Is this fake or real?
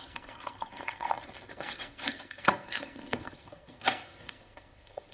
fake